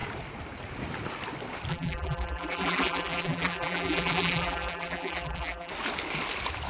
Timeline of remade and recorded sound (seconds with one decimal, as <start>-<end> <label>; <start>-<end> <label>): 0.0-1.7 recorded; 1.7-5.7 remade; 5.7-6.7 recorded